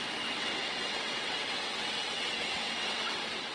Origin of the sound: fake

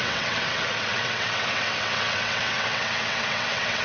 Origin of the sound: fake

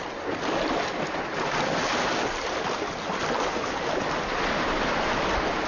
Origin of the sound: real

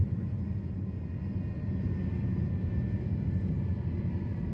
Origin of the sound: real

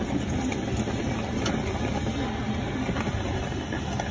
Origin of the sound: real